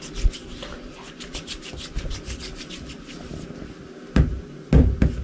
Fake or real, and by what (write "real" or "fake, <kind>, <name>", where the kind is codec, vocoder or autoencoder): real